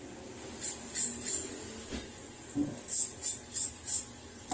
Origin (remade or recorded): recorded